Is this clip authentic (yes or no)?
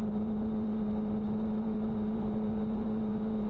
no